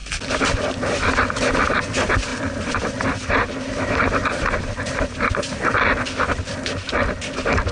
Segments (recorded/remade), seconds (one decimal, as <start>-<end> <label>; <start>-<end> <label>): 0.0-2.3 recorded; 2.3-2.8 remade; 2.8-7.7 recorded